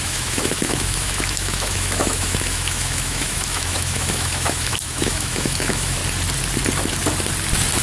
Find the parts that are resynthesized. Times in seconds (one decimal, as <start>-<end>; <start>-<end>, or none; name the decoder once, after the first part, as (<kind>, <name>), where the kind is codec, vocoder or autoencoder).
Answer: 0.0-6.0 (autoencoder, DAC-VAE)